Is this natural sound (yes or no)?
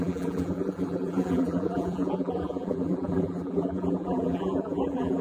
no